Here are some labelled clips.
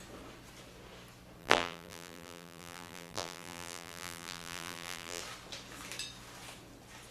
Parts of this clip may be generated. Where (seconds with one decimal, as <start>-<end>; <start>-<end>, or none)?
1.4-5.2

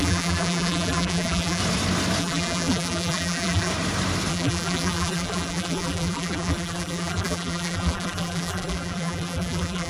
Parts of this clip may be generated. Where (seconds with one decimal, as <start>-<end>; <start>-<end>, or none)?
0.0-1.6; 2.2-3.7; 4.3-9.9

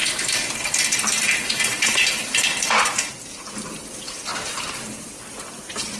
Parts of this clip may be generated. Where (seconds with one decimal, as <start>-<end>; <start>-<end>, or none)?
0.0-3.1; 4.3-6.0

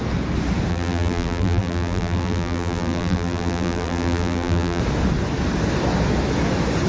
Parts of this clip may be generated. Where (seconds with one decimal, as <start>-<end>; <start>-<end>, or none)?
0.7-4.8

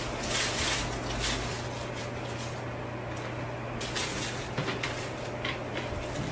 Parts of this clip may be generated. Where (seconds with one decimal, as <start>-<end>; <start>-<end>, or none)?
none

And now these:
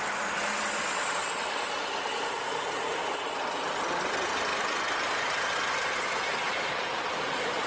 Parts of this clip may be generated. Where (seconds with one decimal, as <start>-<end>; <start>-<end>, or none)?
1.2-3.0

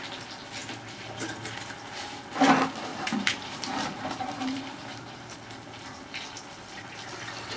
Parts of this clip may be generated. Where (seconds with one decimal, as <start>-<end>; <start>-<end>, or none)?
2.9-5.3

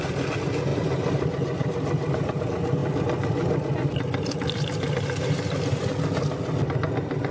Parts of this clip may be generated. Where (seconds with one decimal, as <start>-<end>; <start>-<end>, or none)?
0.7-2.4; 2.8-5.9